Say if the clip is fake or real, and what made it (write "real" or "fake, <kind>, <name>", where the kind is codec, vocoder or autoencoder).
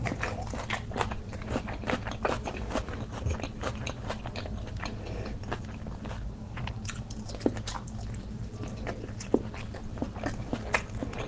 real